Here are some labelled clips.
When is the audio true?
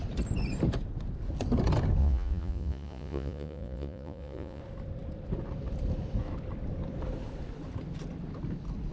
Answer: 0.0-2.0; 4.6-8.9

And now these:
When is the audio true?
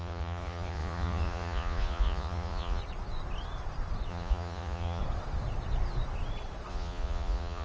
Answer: 2.8-4.1; 5.0-6.7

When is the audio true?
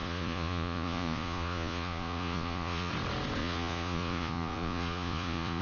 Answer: 2.9-3.4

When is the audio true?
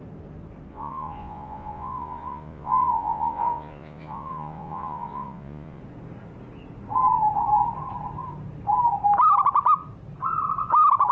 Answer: 0.0-0.7; 5.8-11.1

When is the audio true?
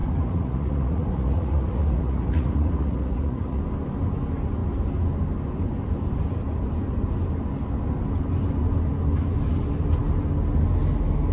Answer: 3.6-11.3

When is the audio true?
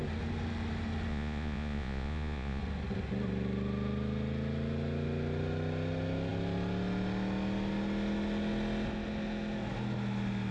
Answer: 0.0-1.1; 2.6-10.5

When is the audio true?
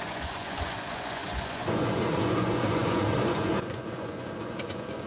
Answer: none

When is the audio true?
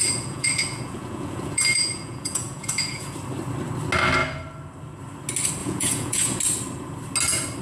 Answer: 3.1-5.6; 6.4-7.6